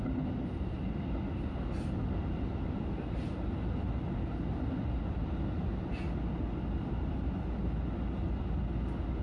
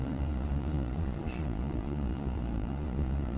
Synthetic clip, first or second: second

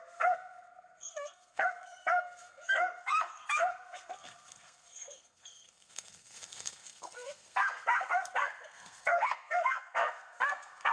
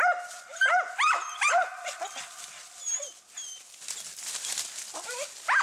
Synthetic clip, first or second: first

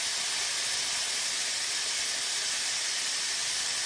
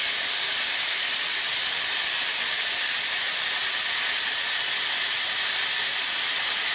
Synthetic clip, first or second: second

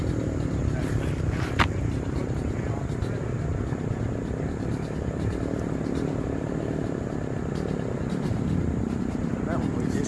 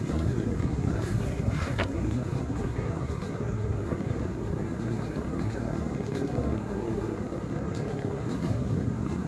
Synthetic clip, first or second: second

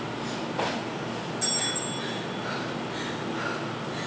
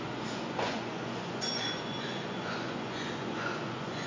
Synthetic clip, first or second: second